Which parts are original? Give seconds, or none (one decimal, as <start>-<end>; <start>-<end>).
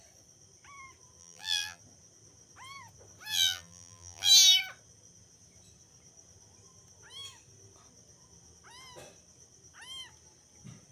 0.0-1.2; 1.8-3.3; 4.3-10.9